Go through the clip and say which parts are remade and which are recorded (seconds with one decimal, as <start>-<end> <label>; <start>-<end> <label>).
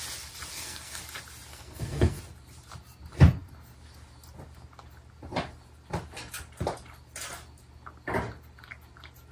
0.0-0.5 recorded; 0.5-1.0 remade; 1.0-1.5 recorded; 1.5-2.2 remade; 2.2-9.3 recorded